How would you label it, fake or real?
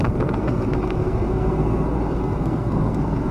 fake